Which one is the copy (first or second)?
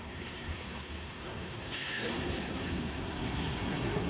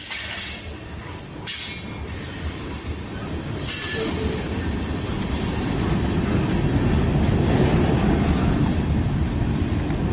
first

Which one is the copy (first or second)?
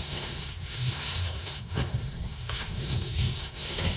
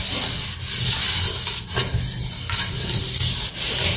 first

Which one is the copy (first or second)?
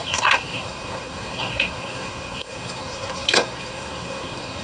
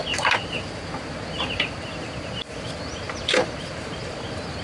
first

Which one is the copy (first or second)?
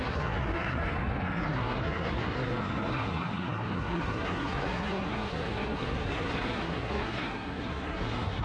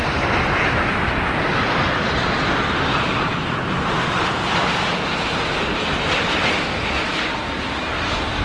first